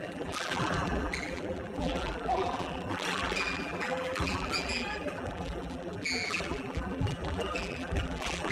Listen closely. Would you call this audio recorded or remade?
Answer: remade